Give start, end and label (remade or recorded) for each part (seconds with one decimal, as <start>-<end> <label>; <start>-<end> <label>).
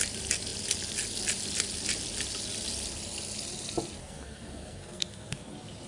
0.0-4.0 recorded; 4.0-5.5 remade; 5.5-5.9 recorded